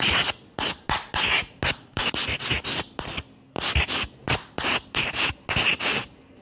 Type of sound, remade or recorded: recorded